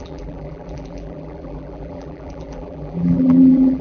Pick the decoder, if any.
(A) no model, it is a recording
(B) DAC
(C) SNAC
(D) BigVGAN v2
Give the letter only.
D